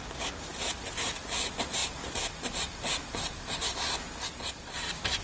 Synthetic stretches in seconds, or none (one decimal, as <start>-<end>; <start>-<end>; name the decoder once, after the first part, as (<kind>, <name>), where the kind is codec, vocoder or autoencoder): none